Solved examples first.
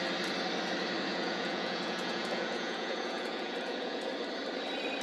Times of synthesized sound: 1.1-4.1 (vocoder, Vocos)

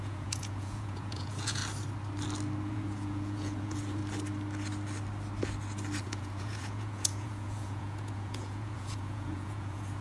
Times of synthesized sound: 0.0-1.6 (vocoder, Vocos); 2.6-4.0; 6.0-10.0